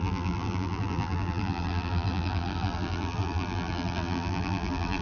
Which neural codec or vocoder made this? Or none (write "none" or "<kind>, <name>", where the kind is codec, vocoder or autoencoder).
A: vocoder, BigVGAN v2